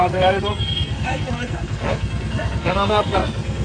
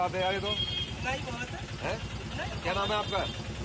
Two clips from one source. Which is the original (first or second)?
second